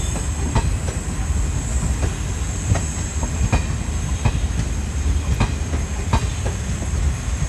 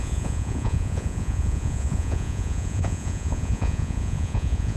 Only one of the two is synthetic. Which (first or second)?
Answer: second